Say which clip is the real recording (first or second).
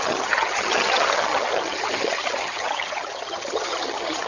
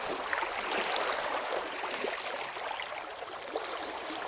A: second